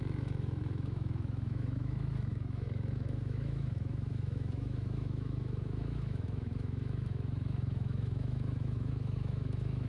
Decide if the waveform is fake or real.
fake